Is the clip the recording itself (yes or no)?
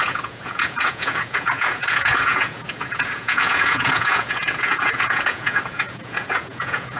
no